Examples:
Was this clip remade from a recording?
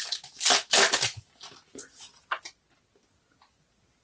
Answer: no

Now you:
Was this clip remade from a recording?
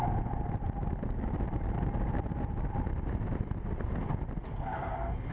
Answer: no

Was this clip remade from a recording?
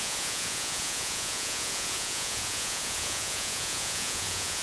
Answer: yes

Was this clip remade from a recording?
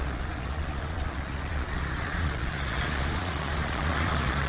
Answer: yes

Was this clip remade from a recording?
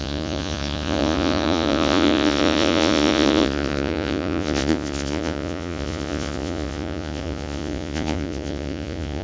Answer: yes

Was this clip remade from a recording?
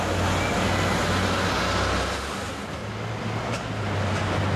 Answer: no